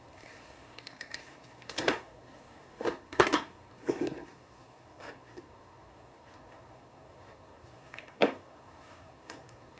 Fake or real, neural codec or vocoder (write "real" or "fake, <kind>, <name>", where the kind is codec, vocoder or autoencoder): fake, codec, SNAC